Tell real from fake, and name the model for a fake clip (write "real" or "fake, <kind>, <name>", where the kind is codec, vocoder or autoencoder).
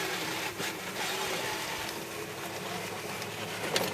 real